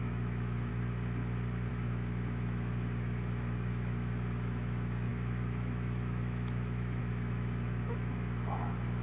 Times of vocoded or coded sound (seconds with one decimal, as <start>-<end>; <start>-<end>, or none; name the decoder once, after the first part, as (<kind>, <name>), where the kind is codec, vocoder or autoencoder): 0.0-0.7 (autoencoder, DAC-VAE); 1.7-9.0